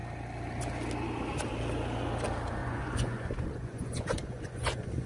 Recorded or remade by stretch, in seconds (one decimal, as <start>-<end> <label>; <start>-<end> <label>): 0.0-2.6 recorded; 2.6-5.1 remade